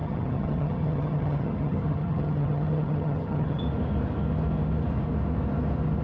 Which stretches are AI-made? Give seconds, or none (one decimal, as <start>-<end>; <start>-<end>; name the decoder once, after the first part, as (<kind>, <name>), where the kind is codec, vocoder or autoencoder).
0.0-3.6 (vocoder, HiFi-GAN)